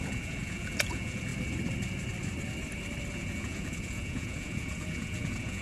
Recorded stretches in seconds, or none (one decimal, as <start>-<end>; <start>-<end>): 1.3-3.1